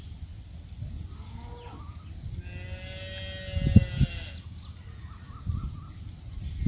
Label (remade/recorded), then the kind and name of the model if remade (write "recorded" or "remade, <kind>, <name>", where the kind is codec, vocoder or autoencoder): recorded